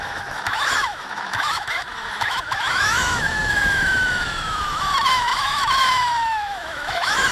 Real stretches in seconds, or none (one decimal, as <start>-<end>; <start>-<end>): none